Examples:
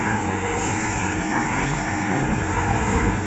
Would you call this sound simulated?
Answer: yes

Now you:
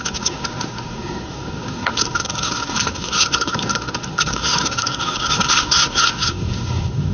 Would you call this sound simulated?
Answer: yes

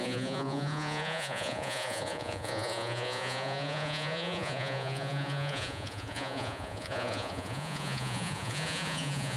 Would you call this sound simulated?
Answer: yes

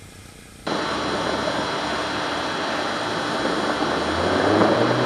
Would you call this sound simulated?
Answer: no